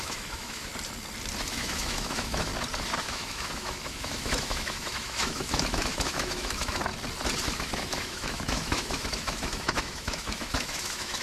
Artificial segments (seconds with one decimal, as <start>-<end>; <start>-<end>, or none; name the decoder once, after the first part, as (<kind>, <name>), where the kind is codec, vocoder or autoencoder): 0.0-0.7 (autoencoder, DAC-VAE); 1.5-2.5; 3.0-6.9; 7.5-11.2